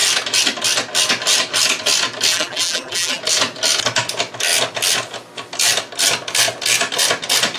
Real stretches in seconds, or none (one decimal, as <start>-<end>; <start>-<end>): 0.0-2.3; 3.2-7.6